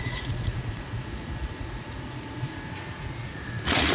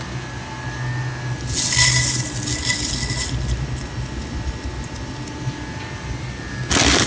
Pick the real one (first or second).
second